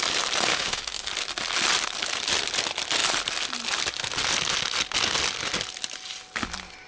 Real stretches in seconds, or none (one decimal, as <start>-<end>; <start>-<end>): 0.0-0.5; 1.1-6.9